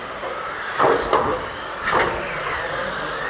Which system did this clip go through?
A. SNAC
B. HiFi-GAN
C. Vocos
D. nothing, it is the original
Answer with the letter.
D